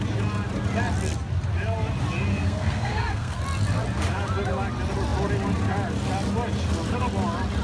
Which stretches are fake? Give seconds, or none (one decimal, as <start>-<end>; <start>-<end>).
2.3-3.4